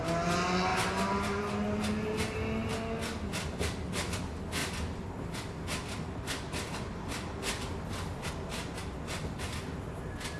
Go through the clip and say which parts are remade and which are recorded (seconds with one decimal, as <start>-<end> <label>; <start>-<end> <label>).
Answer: 0.0-10.4 recorded